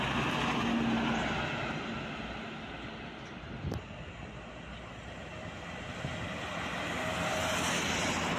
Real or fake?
real